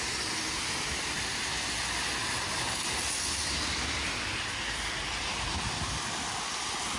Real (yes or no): yes